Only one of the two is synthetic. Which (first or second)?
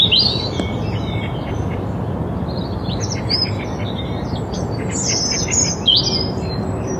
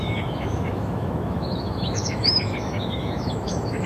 second